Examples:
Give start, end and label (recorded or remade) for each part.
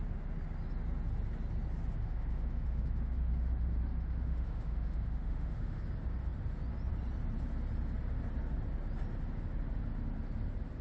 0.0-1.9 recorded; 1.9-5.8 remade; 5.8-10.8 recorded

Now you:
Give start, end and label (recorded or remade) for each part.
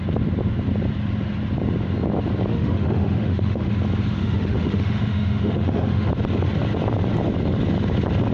0.0-2.5 recorded; 2.5-3.7 remade; 3.7-4.2 recorded; 4.2-6.1 remade; 6.1-8.3 recorded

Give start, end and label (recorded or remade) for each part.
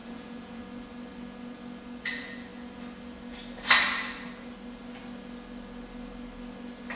0.0-0.6 remade; 0.6-7.0 recorded